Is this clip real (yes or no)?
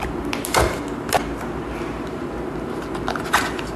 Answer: yes